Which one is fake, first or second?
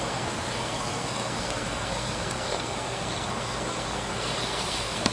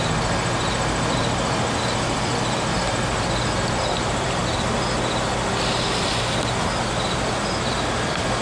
first